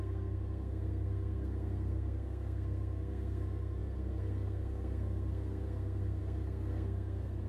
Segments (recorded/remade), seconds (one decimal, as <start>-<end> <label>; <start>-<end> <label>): 0.0-7.5 remade